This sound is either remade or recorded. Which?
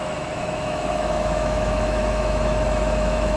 remade